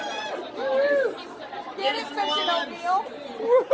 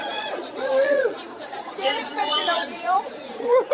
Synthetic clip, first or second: second